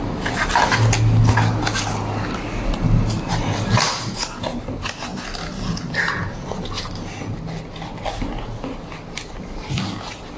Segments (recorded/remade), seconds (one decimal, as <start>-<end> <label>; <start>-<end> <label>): 0.0-10.4 recorded